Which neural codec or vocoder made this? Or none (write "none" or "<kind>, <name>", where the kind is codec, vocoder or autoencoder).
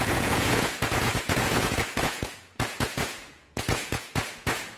vocoder, Vocos